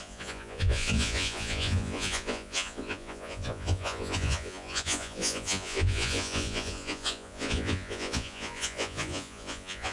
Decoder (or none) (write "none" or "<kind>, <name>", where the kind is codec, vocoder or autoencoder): vocoder, Vocos